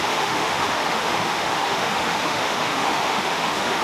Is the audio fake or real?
fake